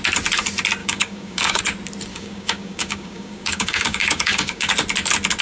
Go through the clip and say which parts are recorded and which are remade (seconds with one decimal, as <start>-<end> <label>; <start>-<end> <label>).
0.0-0.8 recorded; 0.8-1.6 remade; 1.6-2.1 recorded; 2.1-4.7 remade; 4.7-5.4 recorded